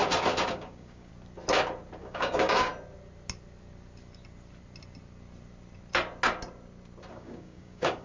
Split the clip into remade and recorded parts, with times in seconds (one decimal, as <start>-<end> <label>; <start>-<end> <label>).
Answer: 0.0-0.5 recorded; 0.5-1.1 remade; 1.1-2.0 recorded; 2.0-2.7 remade; 2.7-7.1 recorded; 7.1-8.0 remade

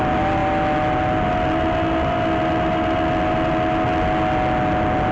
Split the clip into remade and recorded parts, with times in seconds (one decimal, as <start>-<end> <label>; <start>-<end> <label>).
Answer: 0.0-5.1 recorded